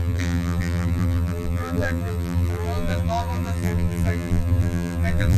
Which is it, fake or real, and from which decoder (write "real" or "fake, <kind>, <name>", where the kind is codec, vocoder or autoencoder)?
fake, vocoder, BigVGAN v2